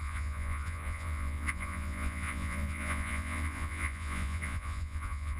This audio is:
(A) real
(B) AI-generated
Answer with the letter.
B